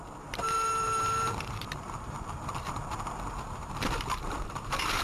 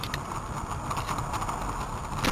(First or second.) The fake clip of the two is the first